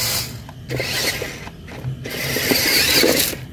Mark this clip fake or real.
real